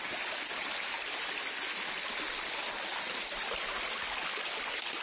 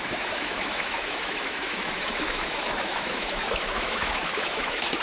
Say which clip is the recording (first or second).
first